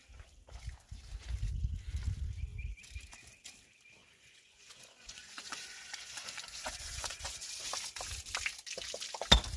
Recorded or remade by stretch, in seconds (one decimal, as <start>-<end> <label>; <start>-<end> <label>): 0.0-4.0 recorded; 4.0-7.5 remade; 7.5-9.6 recorded

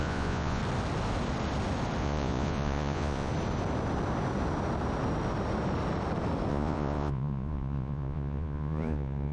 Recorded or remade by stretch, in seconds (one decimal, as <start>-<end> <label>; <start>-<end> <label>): 0.0-0.6 remade; 0.6-2.0 recorded; 2.0-3.3 remade; 3.3-6.5 recorded; 6.5-9.3 remade

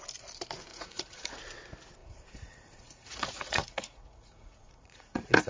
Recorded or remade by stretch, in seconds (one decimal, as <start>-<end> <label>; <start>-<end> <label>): 0.0-0.7 recorded; 0.7-1.3 remade; 1.3-2.0 recorded; 2.0-5.5 remade